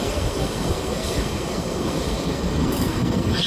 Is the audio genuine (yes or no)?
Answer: no